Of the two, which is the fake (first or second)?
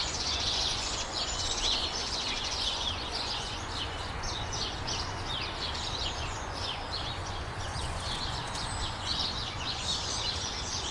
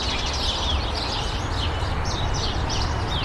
first